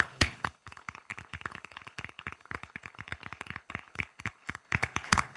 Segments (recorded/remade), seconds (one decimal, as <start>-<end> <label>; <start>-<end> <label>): 0.0-5.4 remade